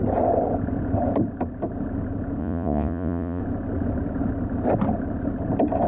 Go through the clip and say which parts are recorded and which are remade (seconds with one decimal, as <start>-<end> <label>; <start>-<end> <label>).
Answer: 0.0-2.4 recorded; 2.4-3.4 remade; 3.4-5.9 recorded

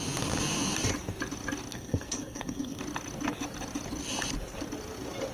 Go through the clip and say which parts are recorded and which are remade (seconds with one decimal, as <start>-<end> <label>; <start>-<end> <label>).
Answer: 0.0-1.7 recorded; 1.7-2.8 remade; 2.8-5.3 recorded